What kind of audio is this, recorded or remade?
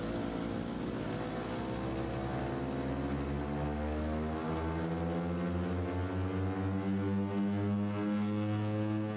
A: recorded